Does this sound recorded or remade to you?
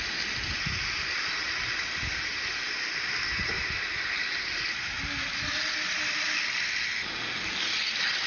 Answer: recorded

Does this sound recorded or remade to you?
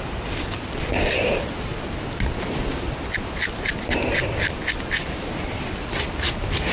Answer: recorded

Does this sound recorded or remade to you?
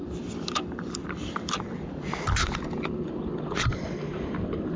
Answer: remade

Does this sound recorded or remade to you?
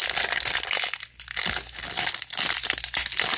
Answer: recorded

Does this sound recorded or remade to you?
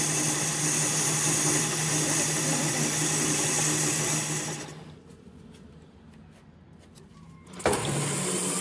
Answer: recorded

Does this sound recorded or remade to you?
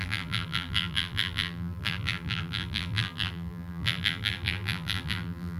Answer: remade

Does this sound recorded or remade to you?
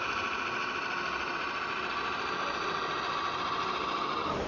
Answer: recorded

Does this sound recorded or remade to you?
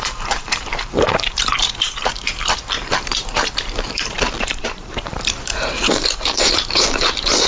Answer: remade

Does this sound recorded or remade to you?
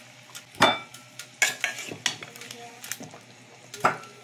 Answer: recorded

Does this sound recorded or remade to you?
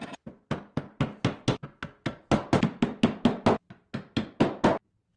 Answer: recorded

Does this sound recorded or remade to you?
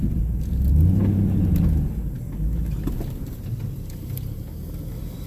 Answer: recorded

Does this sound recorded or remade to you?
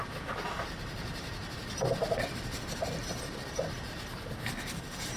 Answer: recorded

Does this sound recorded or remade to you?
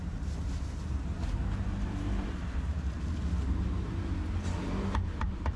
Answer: remade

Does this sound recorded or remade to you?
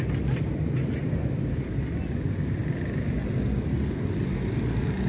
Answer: recorded